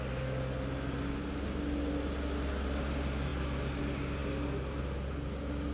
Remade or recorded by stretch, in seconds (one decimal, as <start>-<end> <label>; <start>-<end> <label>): 0.0-5.7 recorded